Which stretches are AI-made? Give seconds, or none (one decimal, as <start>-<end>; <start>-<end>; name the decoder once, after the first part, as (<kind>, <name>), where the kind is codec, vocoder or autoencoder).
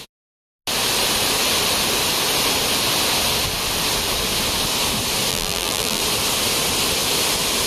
5.3-6.0 (vocoder, BigVGAN v2)